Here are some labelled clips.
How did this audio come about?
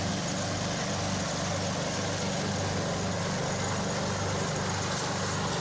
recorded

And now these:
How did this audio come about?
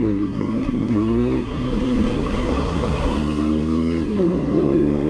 remade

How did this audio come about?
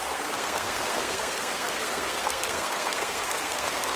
remade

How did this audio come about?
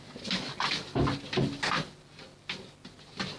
recorded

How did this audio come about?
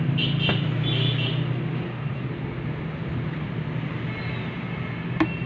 recorded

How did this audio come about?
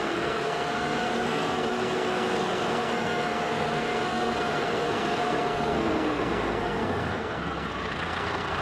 remade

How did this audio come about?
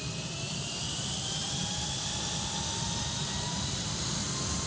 recorded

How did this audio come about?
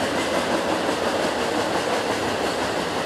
recorded